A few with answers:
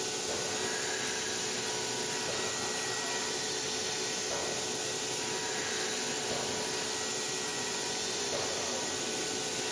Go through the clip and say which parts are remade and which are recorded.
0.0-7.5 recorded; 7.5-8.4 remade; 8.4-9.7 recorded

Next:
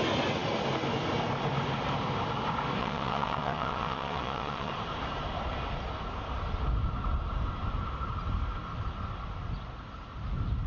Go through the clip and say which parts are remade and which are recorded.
0.0-2.8 recorded; 2.8-4.7 remade; 4.7-10.7 recorded

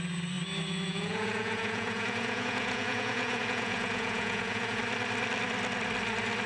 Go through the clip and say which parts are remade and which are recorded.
0.0-0.9 recorded; 0.9-4.8 remade; 4.8-6.5 recorded